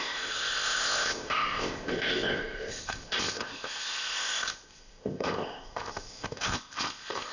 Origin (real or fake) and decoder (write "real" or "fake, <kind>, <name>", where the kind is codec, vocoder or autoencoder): fake, codec, ZipCodec